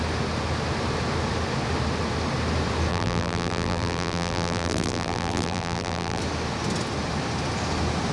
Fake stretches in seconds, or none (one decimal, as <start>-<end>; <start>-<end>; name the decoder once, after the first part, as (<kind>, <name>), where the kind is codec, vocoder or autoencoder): 2.9-6.2 (vocoder, BigVGAN v2)